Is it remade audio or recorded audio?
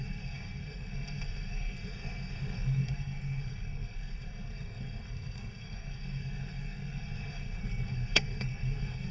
remade